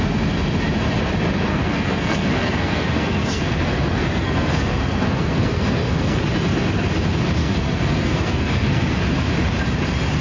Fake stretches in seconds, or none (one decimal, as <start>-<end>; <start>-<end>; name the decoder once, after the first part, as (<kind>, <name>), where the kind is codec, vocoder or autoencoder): 1.5-6.2 (codec, SNAC); 7.4-9.0